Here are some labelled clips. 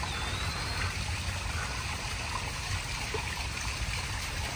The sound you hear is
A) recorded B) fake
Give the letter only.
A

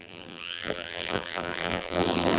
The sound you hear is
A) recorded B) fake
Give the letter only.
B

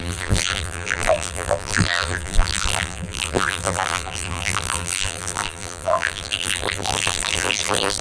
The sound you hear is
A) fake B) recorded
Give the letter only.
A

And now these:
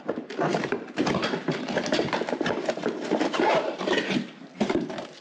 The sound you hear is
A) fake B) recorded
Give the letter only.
A